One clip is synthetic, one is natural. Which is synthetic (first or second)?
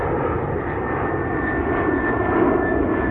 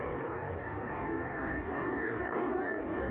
second